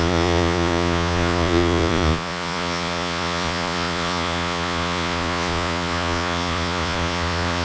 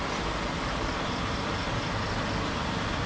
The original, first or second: second